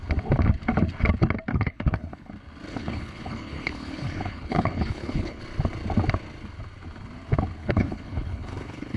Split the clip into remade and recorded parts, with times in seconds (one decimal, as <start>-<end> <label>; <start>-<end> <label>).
0.0-1.5 recorded; 1.5-2.3 remade; 2.3-2.7 recorded; 2.7-5.4 remade; 5.4-7.6 recorded; 7.6-9.0 remade